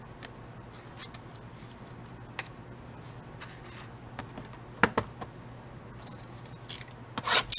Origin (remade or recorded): recorded